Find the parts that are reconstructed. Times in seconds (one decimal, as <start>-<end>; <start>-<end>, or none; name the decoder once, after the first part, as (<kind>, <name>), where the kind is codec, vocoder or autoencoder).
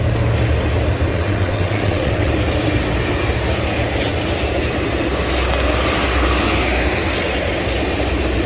1.1-2.3 (vocoder, WaveNeXt)